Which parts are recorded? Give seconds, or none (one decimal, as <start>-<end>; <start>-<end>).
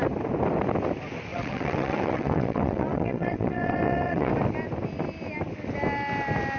0.0-1.3; 4.3-6.6